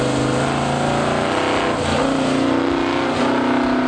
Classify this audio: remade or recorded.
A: recorded